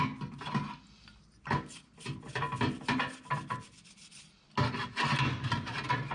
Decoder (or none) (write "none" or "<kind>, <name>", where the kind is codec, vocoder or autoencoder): none